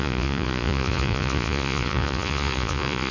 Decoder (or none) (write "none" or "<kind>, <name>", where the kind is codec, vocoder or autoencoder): vocoder, Vocos